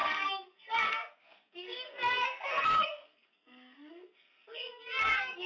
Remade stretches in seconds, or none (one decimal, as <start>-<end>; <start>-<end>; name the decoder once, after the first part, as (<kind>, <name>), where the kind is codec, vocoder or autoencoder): 0.0-5.5 (codec, SNAC)

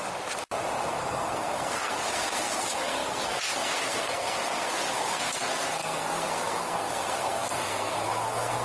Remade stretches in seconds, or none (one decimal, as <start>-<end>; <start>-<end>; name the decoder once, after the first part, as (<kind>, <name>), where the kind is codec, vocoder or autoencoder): 0.9-8.6 (codec, SNAC)

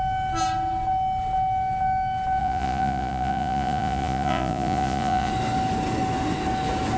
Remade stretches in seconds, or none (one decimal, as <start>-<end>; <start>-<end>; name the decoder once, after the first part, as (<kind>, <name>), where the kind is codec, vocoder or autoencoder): 2.4-5.3 (vocoder, Vocos)

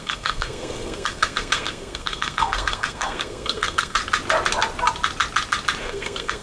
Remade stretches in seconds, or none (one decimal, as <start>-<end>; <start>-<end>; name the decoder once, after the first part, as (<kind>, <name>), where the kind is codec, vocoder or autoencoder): 0.0-4.0 (codec, SNAC); 5.8-6.4

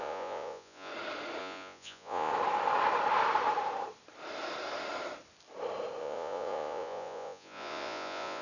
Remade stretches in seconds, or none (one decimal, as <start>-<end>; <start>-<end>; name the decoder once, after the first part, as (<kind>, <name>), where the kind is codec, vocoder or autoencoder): 0.0-0.9 (vocoder, Vocos); 1.4-2.3; 6.0-8.4

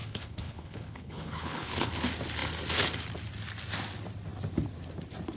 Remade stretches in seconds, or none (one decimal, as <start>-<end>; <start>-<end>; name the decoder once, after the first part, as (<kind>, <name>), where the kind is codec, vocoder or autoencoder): 0.0-1.9 (codec, HILCodec)